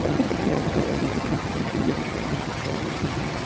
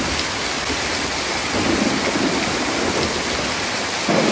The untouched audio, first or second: second